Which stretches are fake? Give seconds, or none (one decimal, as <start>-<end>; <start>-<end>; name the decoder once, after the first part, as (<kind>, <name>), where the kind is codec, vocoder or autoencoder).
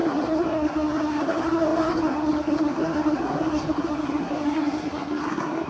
0.0-5.7 (codec, SNAC)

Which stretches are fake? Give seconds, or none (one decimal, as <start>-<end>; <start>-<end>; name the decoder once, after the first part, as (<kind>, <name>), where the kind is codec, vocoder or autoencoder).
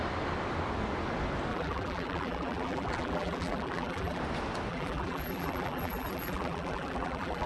1.5-4.2 (vocoder, BigVGAN v2); 4.7-7.5